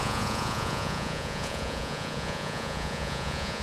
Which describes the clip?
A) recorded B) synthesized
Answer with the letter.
B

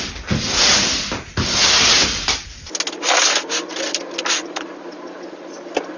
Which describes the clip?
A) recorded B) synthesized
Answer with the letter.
A